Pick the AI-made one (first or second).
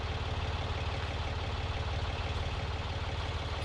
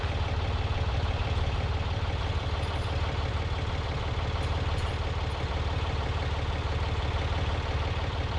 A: second